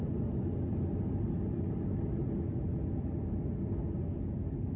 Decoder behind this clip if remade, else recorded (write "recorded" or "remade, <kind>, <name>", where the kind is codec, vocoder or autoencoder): recorded